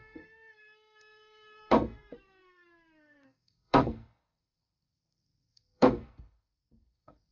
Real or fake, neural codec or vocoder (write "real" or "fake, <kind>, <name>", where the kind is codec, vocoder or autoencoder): fake, codec, SNAC